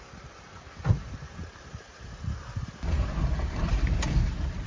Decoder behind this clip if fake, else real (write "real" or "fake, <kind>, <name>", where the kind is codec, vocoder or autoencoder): fake, vocoder, BigVGAN v2